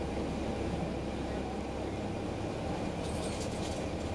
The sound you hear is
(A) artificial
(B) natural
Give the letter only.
B